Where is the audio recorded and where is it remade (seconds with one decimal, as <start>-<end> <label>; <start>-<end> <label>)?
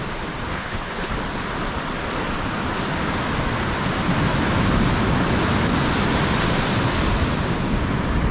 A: 0.0-0.5 recorded; 0.5-1.1 remade; 1.1-8.3 recorded